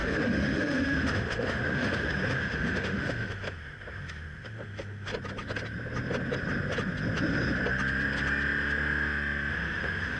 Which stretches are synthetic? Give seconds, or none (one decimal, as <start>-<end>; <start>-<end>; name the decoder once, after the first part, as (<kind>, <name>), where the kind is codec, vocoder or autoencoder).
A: 0.0-5.1 (autoencoder, DAC-VAE); 9.5-10.2